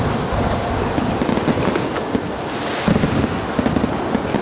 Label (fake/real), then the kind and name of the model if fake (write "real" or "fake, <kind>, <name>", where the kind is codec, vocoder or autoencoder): real